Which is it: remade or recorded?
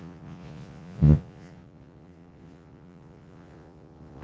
remade